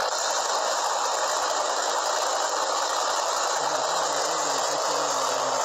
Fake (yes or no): yes